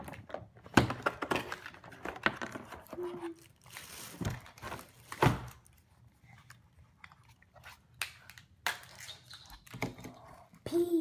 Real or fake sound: real